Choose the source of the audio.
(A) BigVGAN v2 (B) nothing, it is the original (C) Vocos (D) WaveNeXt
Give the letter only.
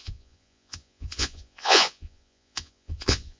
C